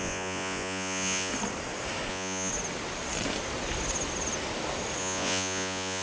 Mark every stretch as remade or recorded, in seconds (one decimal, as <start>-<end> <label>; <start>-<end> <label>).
0.0-1.3 remade; 1.3-2.1 recorded; 2.1-2.5 remade; 2.5-5.0 recorded; 5.0-6.0 remade